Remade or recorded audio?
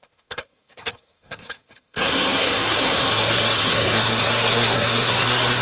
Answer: remade